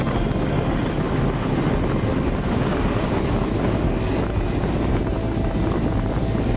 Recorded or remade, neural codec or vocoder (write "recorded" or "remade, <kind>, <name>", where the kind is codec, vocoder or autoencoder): recorded